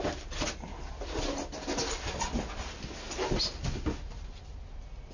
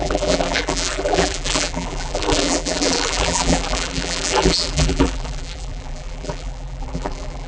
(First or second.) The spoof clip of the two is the second